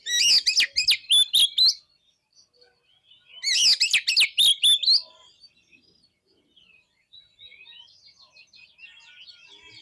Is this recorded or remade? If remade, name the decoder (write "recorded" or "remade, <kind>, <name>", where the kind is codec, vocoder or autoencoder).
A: recorded